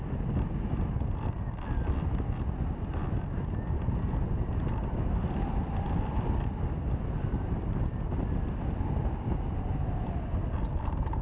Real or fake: real